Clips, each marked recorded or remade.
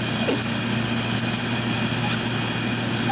recorded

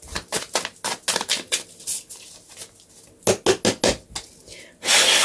recorded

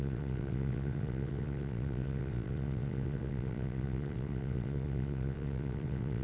remade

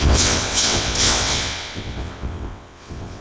remade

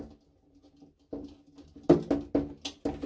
recorded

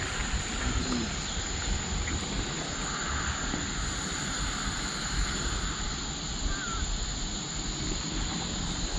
recorded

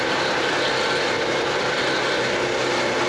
recorded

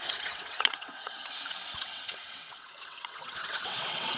remade